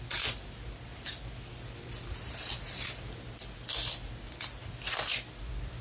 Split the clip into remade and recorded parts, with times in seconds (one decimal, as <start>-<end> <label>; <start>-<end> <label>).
0.0-5.8 recorded